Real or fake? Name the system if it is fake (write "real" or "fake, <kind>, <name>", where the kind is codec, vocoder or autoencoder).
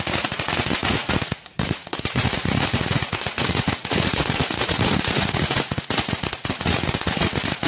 fake, vocoder, Vocos